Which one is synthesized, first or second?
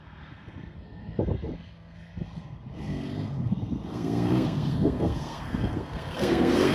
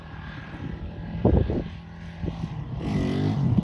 first